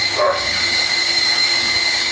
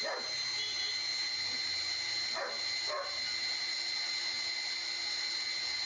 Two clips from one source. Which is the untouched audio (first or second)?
second